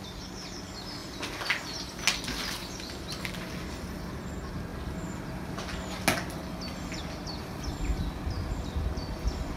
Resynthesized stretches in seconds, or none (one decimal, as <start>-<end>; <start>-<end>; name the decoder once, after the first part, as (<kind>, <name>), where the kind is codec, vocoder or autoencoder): 4.7-5.6 (vocoder, BigVGAN v2); 7.9-8.9